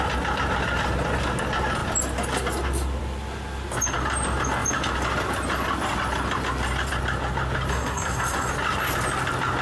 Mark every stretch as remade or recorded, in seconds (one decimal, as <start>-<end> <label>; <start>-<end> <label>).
0.0-7.7 recorded; 7.7-8.5 remade; 8.5-9.6 recorded